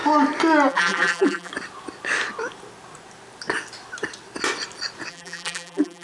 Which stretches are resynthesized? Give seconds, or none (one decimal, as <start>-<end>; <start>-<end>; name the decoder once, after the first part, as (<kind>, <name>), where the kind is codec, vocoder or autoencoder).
0.7-1.5 (vocoder, BigVGAN v2); 5.1-6.0